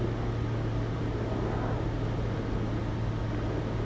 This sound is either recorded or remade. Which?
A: recorded